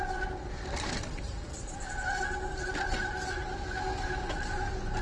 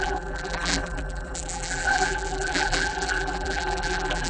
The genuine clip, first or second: first